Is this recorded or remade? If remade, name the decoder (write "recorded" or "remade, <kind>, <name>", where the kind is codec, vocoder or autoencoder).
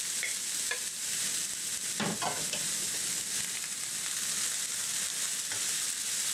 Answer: recorded